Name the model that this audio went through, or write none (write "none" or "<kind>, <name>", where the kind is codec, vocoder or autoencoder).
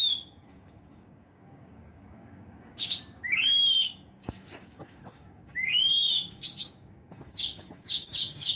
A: codec, DAC